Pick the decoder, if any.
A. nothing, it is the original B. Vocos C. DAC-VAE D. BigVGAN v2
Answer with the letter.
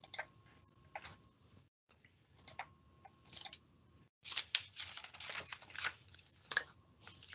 A